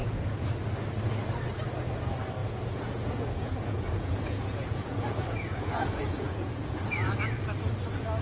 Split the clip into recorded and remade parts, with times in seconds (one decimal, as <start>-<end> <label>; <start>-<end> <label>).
0.0-0.5 remade; 0.5-2.4 recorded; 2.4-7.2 remade; 7.2-8.2 recorded